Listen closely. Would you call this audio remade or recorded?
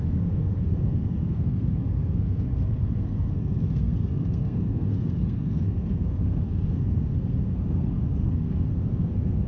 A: remade